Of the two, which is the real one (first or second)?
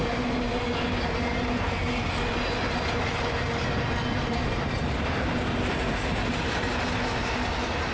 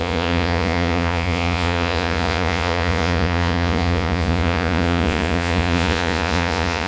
first